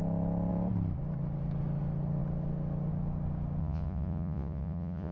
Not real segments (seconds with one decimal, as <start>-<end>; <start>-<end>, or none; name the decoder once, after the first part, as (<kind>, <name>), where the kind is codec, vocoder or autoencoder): 3.6-5.1 (vocoder, Vocos)